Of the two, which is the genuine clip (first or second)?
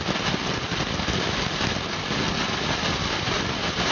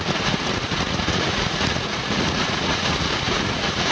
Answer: first